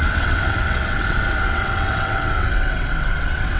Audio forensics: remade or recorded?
remade